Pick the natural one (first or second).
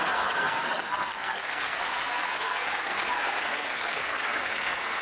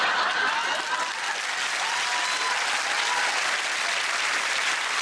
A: second